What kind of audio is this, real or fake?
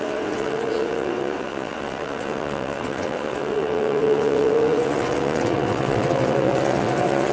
fake